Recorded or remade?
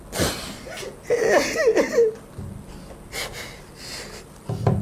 recorded